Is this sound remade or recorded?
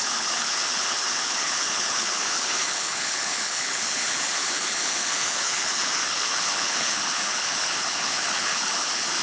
remade